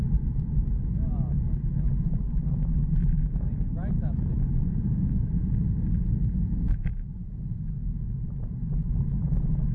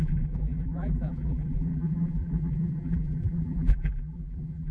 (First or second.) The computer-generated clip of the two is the second